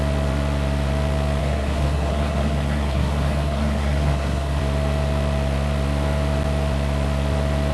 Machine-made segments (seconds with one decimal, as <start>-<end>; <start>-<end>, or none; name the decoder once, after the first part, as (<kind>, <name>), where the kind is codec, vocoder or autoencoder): 1.4-4.6 (codec, SNAC)